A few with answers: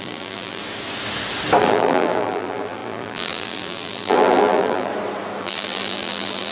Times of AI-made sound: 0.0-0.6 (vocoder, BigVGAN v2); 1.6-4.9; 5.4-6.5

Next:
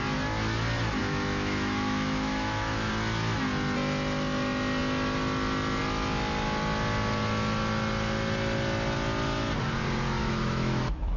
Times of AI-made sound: 1.0-2.9 (autoencoder, DAC-VAE); 10.2-11.2

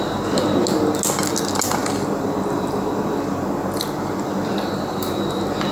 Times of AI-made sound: 1.8-5.2 (vocoder, BigVGAN v2)

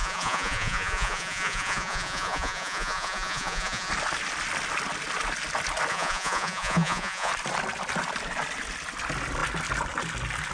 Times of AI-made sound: 0.0-3.9 (vocoder, Vocos); 5.9-7.3

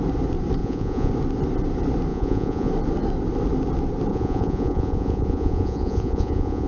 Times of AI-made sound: 0.6-1.1 (vocoder, Vocos); 2.1-2.7; 4.1-6.7

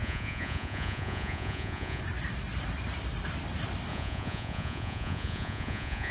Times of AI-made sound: 0.0-2.0 (vocoder, Vocos); 3.9-6.1

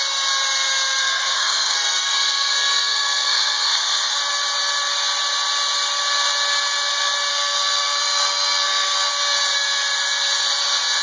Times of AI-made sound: 1.0-4.2 (codec, SNAC); 7.3-9.1